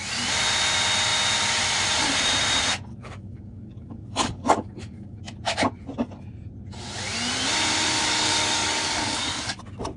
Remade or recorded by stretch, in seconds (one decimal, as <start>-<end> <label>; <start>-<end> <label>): 0.0-2.9 recorded; 2.9-5.2 remade; 5.2-8.0 recorded; 8.0-9.6 remade; 9.6-10.0 recorded